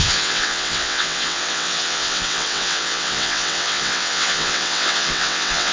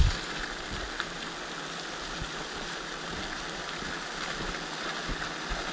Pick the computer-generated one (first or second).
first